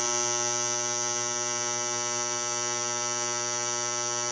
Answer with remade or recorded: recorded